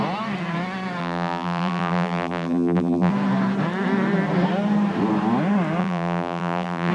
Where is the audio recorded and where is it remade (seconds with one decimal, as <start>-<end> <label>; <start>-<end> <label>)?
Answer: 0.0-1.0 recorded; 1.0-3.1 remade; 3.1-5.8 recorded; 5.8-6.9 remade